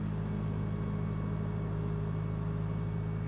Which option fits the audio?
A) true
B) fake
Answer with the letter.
A